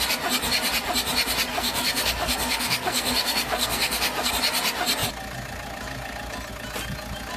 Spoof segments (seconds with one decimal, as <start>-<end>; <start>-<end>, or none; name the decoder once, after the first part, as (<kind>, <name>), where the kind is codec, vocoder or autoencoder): 1.5-4.3 (codec, SNAC)

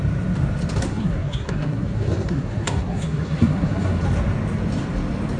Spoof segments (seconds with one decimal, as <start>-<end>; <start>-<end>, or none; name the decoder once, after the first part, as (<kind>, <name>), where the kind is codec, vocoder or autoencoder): 0.8-4.0 (codec, SNAC)